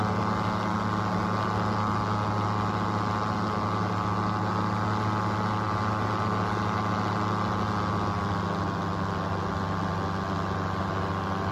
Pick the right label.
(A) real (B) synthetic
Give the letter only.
A